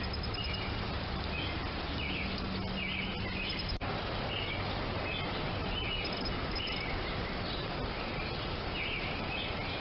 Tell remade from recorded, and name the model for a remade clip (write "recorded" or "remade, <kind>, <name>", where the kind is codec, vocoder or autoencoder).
recorded